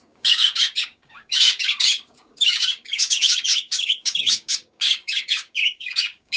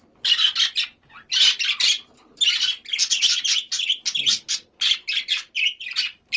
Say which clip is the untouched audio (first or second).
second